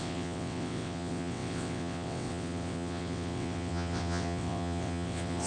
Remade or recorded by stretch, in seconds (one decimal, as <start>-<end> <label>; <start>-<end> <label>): 0.0-5.5 remade